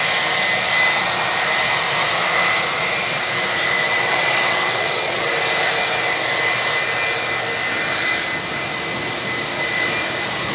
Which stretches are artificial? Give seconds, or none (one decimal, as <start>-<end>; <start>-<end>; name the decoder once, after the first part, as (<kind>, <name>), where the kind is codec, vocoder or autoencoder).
3.8-5.3 (vocoder, WaveNeXt)